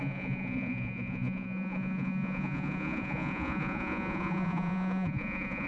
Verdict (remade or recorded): remade